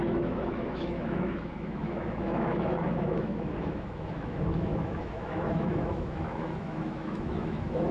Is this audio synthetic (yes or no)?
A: yes